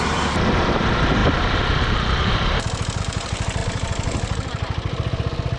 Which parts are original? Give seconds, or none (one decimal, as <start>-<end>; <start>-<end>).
none